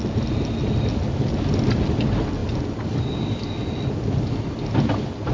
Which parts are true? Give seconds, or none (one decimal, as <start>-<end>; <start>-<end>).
0.0-5.3